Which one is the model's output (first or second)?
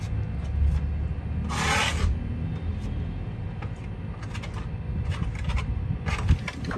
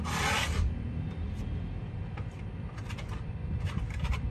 second